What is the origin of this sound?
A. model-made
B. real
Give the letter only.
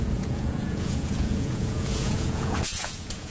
A